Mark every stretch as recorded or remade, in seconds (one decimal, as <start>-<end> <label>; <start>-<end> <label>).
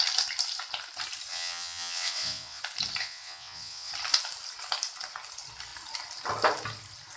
0.0-1.3 recorded; 1.3-2.6 remade; 2.6-3.0 recorded; 3.0-3.9 remade; 3.9-7.2 recorded